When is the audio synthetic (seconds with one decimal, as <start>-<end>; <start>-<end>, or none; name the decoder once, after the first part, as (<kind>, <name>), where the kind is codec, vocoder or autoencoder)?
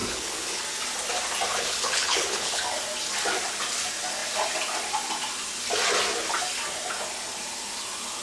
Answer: 0.0-0.6 (codec, HILCodec); 1.5-2.6